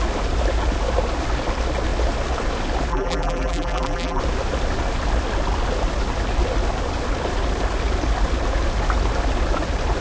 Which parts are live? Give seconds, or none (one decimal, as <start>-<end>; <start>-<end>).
0.0-2.9; 4.2-10.0